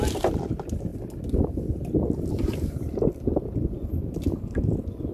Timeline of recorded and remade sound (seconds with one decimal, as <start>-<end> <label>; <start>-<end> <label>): 0.0-5.1 recorded